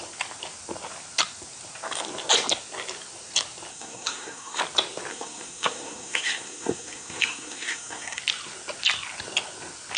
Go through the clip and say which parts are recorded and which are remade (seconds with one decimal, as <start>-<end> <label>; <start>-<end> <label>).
0.0-3.7 recorded; 3.7-4.6 remade; 4.6-5.1 recorded; 5.1-8.2 remade; 8.2-10.0 recorded